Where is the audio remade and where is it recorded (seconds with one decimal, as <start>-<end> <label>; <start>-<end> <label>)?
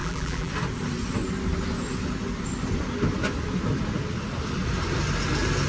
0.0-0.5 remade; 0.5-5.7 recorded